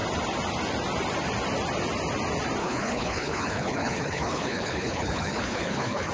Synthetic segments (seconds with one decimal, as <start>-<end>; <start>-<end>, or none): 2.6-6.1